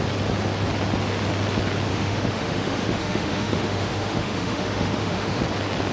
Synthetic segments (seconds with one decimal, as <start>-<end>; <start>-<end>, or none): 1.9-5.4